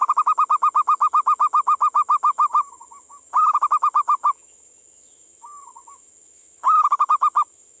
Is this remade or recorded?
remade